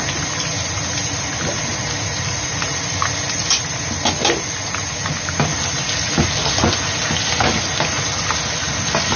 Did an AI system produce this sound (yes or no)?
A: no